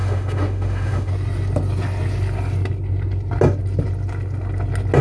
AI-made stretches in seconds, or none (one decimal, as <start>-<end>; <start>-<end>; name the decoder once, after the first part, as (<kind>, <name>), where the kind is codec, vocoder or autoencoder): 0.0-1.1 (autoencoder, DAC-VAE)